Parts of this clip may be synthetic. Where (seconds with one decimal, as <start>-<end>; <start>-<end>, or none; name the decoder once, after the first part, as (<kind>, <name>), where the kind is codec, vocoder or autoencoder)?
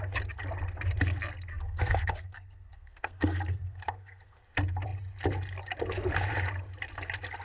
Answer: 1.5-4.4 (codec, SNAC)